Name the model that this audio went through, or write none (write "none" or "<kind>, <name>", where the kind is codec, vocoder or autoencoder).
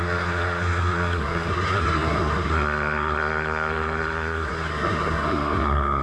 codec, SNAC